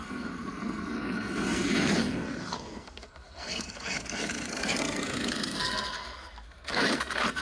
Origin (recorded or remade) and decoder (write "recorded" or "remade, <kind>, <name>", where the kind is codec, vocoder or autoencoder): remade, codec, SNAC